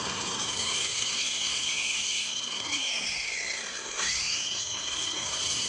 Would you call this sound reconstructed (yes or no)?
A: yes